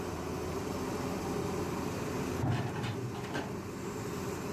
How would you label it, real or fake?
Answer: real